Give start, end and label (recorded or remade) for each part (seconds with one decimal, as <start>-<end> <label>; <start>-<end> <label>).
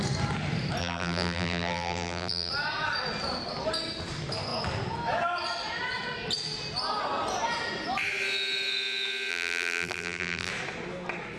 0.0-0.8 recorded; 0.8-2.5 remade; 2.5-9.3 recorded; 9.3-10.5 remade; 10.5-11.4 recorded